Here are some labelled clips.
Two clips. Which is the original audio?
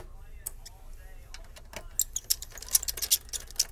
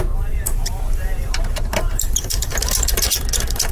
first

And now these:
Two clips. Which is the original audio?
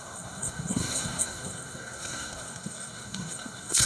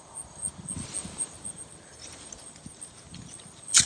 second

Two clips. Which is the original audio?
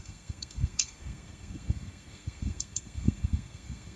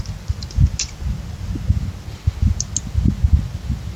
second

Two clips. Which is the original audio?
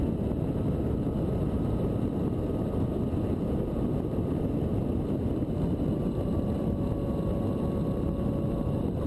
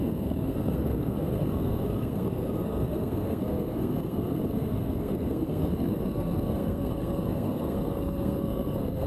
first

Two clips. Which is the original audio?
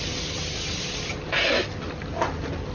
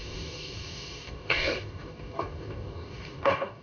first